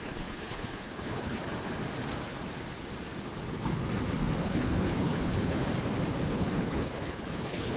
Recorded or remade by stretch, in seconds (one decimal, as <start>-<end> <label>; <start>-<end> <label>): 0.0-1.4 remade; 1.4-4.4 recorded; 4.4-5.6 remade; 5.6-6.3 recorded; 6.3-7.8 remade